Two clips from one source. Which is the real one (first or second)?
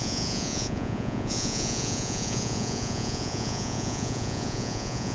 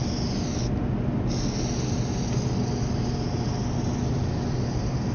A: second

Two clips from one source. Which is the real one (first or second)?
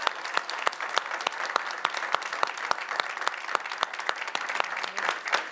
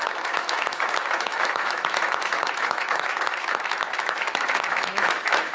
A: first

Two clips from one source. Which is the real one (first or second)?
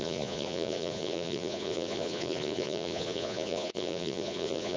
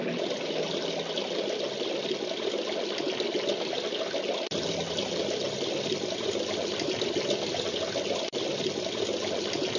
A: second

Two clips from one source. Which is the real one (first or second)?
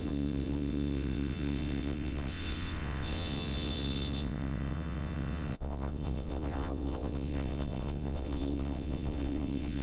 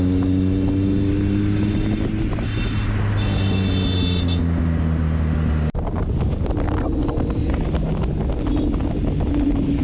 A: second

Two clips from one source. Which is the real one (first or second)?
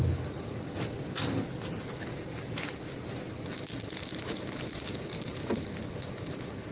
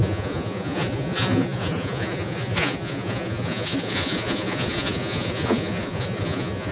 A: first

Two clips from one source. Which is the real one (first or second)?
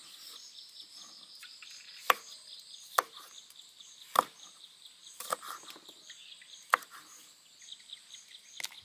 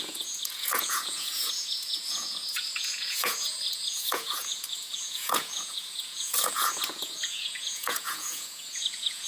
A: first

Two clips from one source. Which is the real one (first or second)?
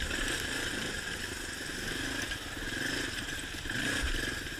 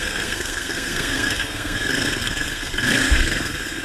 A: first